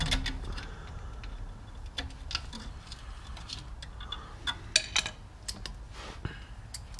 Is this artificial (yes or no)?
no